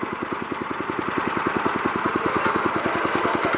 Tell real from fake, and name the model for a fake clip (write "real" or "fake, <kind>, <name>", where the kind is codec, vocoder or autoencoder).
real